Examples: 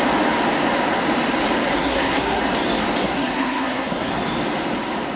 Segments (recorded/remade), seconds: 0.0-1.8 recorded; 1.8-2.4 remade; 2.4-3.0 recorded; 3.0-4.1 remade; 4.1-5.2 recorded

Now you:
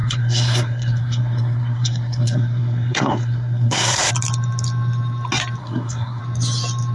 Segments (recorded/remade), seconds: 0.0-4.1 remade; 4.1-5.6 recorded; 5.6-6.2 remade; 6.2-6.9 recorded